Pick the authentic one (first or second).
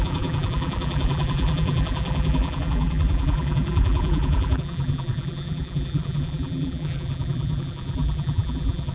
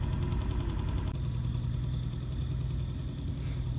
second